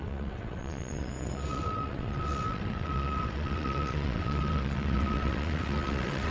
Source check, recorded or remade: remade